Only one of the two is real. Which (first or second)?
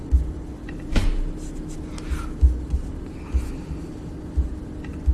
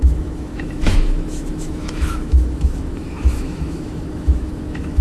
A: first